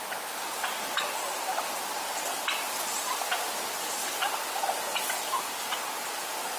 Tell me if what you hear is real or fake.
real